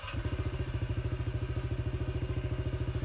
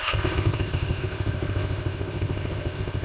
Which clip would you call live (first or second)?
first